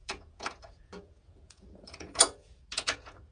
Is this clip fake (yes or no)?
yes